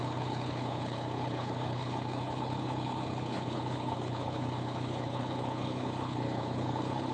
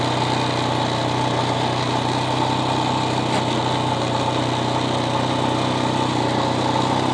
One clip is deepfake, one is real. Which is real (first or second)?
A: second